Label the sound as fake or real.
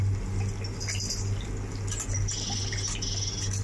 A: real